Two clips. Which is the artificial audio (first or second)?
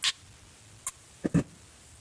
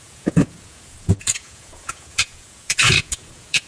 second